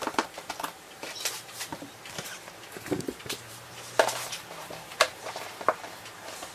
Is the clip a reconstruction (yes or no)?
yes